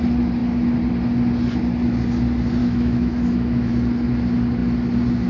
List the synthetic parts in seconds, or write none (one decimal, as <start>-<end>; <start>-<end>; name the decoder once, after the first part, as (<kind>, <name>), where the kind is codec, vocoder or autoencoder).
2.6-3.7 (autoencoder, DAC-VAE)